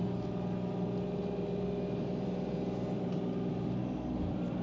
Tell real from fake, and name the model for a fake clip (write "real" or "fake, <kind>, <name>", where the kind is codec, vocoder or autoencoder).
real